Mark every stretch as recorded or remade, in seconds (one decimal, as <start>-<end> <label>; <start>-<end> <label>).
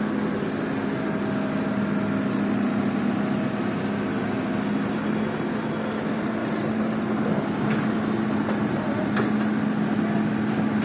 0.0-6.4 recorded; 6.4-7.1 remade; 7.1-8.6 recorded; 8.6-9.2 remade; 9.2-10.8 recorded